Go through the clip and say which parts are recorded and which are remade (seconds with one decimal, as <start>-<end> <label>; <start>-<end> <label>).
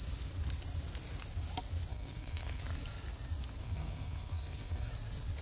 0.0-1.9 recorded; 1.9-2.6 remade; 2.6-3.6 recorded; 3.6-4.9 remade; 4.9-5.4 recorded